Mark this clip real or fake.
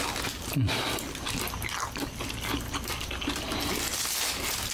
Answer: real